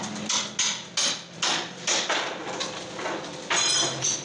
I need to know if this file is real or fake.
real